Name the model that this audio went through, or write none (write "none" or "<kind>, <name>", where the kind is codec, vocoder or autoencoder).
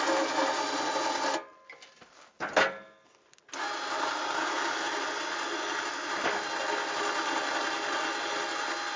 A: none